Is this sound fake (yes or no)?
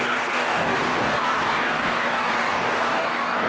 yes